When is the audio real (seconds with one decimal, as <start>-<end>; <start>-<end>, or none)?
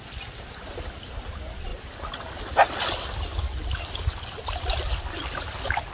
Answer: 0.0-5.9